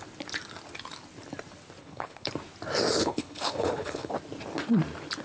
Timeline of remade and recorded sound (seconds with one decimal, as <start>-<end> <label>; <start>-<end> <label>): 0.0-1.8 recorded; 1.8-2.3 remade; 2.3-3.0 recorded; 3.0-4.1 remade; 4.1-5.2 recorded